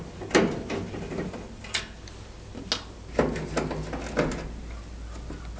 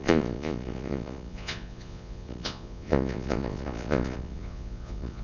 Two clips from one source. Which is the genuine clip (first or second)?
first